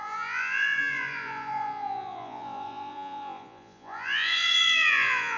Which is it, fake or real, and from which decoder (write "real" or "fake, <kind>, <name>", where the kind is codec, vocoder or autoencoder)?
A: fake, vocoder, Vocos